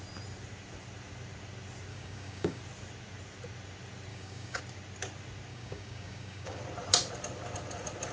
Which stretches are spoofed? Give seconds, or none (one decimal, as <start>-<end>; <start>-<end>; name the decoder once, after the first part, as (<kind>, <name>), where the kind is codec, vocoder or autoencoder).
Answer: 1.9-2.6 (codec, DAC); 4.1-4.6; 5.5-6.6